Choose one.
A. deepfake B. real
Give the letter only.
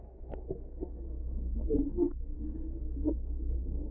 A